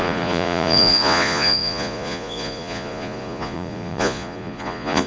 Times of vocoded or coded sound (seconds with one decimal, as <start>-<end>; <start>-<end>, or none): 0.0-5.1